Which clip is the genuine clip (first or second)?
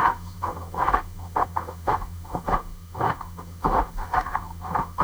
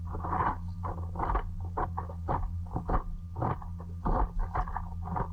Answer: second